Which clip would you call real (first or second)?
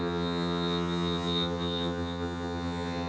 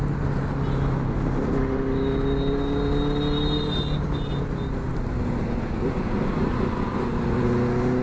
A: second